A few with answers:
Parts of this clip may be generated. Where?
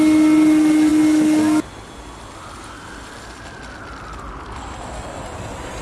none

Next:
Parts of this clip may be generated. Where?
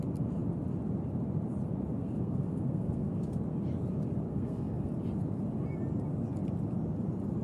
2.0-3.1 (codec, SNAC); 4.3-4.9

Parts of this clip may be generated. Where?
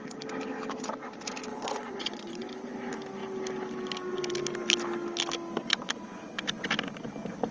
1.5-2.5 (vocoder, Vocos); 5.6-6.4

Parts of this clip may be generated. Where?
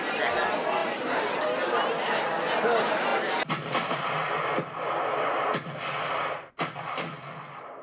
none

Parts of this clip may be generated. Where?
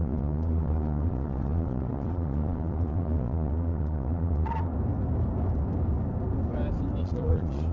0.0-4.7 (vocoder, Vocos); 7.0-7.7